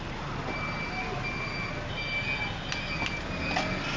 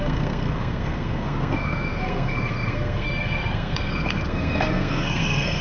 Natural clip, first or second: first